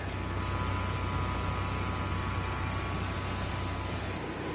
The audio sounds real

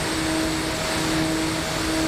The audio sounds real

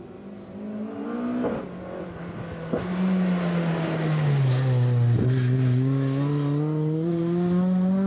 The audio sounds real